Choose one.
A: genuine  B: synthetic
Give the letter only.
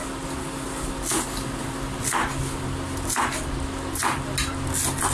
A